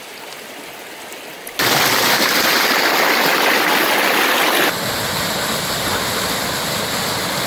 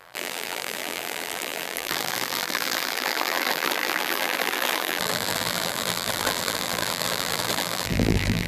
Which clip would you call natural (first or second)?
first